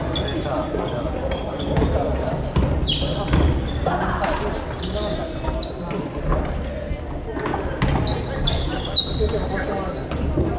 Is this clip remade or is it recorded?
recorded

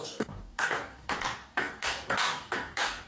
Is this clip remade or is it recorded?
remade